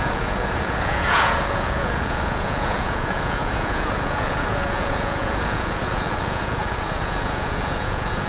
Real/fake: fake